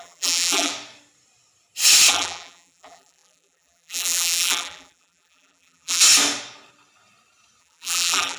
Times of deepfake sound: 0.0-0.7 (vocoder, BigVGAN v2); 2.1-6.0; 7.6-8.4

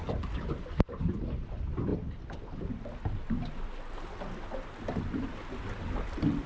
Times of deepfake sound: none

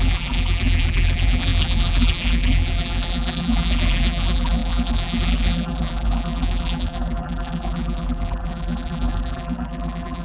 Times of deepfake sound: 0.0-10.2 (vocoder, BigVGAN v2)

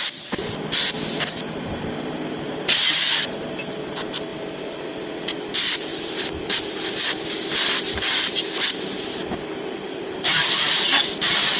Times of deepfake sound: 5.9-6.9 (vocoder, BigVGAN v2)

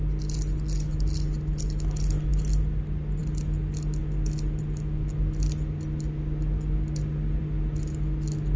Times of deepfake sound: none

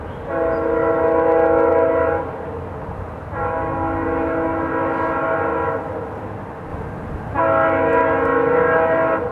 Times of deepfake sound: none